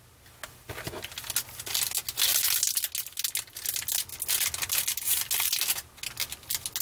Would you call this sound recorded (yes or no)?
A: yes